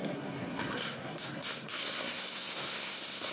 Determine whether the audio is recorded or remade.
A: remade